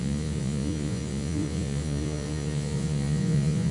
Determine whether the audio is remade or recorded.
remade